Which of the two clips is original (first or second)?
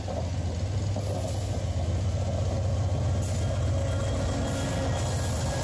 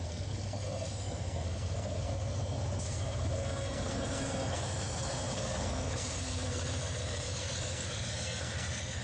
first